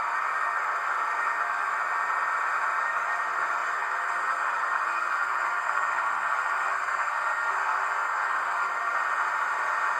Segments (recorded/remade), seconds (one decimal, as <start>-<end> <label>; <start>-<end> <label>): 0.0-1.7 remade; 1.7-2.8 recorded; 2.8-9.0 remade; 9.0-10.0 recorded